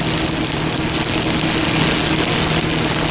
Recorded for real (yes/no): yes